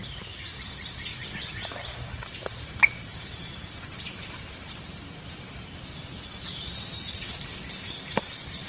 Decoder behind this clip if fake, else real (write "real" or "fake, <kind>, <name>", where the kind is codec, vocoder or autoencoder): fake, vocoder, BigVGAN v2